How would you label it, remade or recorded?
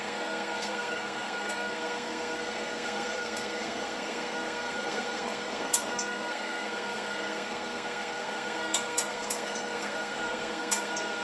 remade